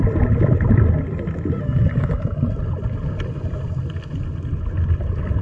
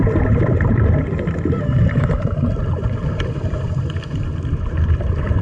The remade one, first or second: second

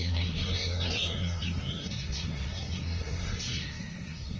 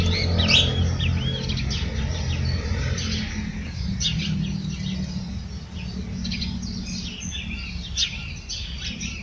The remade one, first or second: first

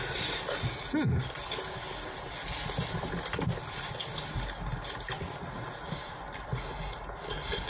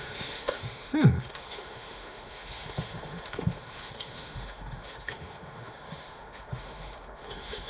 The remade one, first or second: second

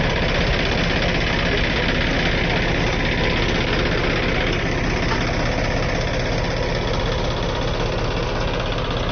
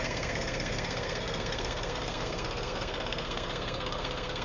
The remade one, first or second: second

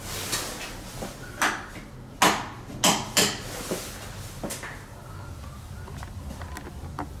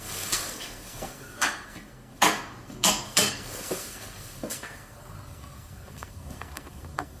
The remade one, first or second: second